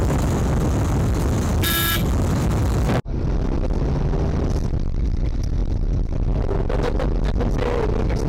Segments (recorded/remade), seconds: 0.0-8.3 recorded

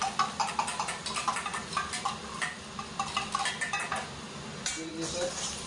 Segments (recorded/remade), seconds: 0.0-5.7 recorded

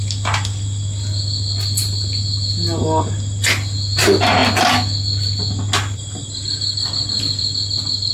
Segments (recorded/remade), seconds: 0.0-8.1 recorded

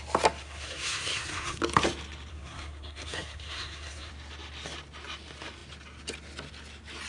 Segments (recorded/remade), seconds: 0.0-0.4 recorded; 0.4-1.6 remade; 1.6-2.3 recorded; 2.3-4.1 remade; 4.1-7.1 recorded

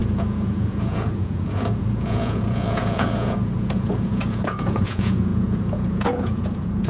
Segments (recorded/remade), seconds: 0.0-6.9 remade

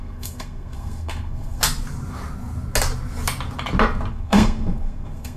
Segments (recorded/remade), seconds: 0.0-1.6 remade; 1.6-4.1 recorded; 4.1-5.4 remade